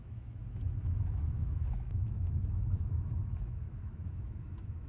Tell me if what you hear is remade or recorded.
remade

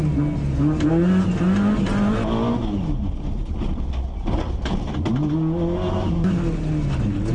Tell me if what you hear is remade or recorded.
recorded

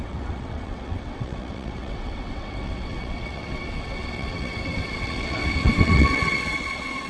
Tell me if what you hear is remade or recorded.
remade